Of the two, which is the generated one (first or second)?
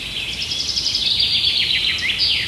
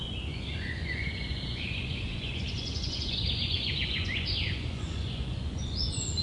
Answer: second